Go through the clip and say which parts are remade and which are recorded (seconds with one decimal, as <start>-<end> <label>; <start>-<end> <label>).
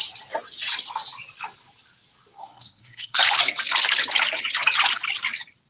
0.0-2.4 recorded; 2.4-3.2 remade; 3.2-5.7 recorded